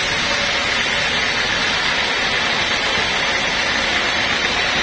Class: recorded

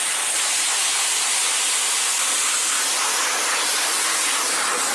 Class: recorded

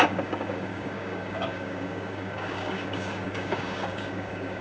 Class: remade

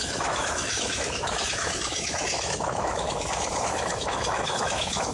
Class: remade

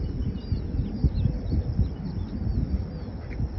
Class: recorded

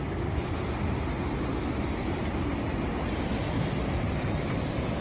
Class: remade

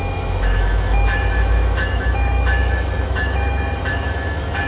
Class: remade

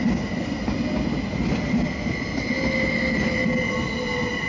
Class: recorded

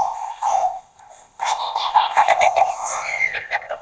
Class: remade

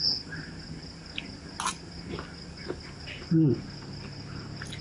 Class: recorded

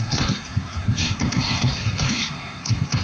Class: remade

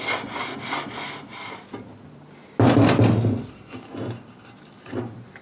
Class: recorded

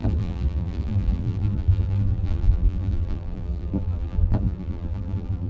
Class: remade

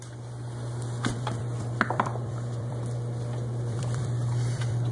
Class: remade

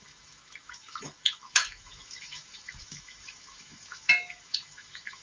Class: remade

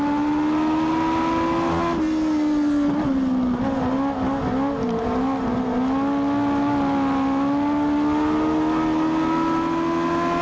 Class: recorded